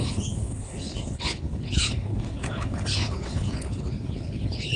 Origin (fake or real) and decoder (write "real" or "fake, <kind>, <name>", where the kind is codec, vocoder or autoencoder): fake, codec, HILCodec